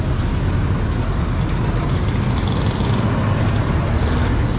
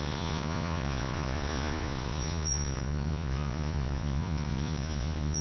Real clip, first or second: first